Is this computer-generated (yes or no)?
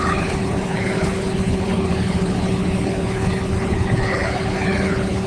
yes